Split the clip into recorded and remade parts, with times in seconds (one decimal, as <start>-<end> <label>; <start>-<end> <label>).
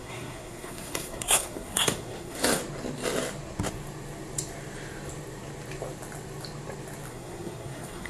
0.0-2.6 remade; 2.6-7.1 recorded; 7.1-8.1 remade